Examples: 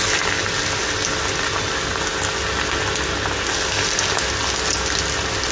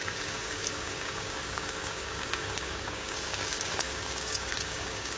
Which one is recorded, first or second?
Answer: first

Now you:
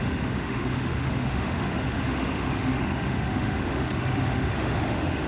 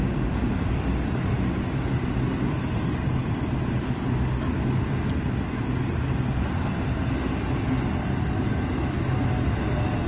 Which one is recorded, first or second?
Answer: second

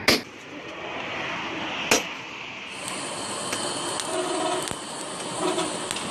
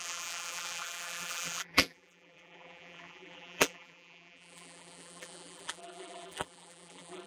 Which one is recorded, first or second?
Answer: first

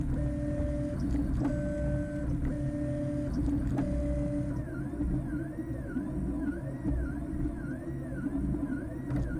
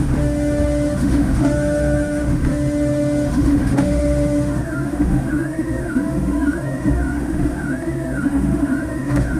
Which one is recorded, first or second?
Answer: first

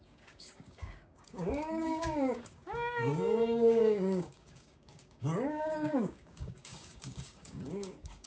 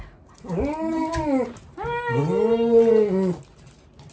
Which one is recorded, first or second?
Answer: second